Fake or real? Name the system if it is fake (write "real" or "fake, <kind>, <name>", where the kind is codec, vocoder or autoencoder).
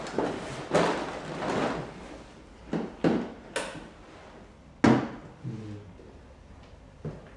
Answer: real